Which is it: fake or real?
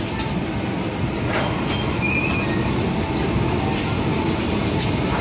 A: real